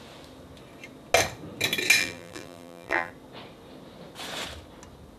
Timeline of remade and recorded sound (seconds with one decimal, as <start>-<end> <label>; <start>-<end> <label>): 0.0-2.0 recorded; 2.0-3.1 remade; 3.1-5.2 recorded

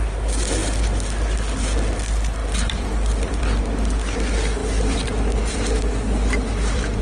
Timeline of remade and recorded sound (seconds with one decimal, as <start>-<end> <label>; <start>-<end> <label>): 0.0-2.4 recorded; 2.4-3.6 remade; 3.6-4.6 recorded; 4.6-7.0 remade

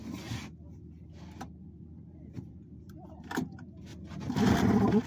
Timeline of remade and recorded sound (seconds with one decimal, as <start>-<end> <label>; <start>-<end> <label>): 0.0-1.9 recorded; 1.9-3.9 remade; 3.9-4.4 recorded; 4.4-5.1 remade

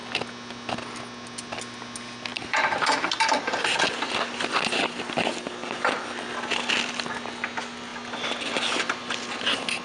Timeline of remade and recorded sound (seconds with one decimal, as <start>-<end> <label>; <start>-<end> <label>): 0.0-2.3 recorded; 2.3-3.8 remade; 3.8-9.8 recorded

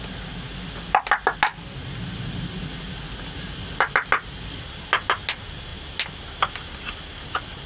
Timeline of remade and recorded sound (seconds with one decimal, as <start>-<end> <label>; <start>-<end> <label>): 0.0-7.7 recorded

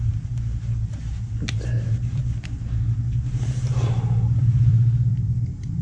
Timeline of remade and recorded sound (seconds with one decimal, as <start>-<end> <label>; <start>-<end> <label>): 0.0-5.8 remade